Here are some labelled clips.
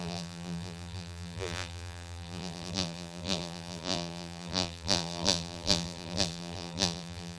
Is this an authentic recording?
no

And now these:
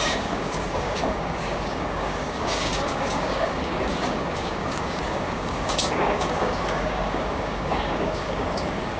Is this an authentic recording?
no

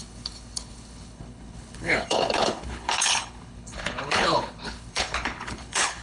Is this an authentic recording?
no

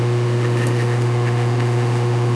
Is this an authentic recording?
no